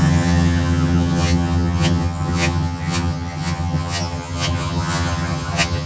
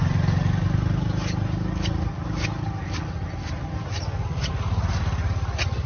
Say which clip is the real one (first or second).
second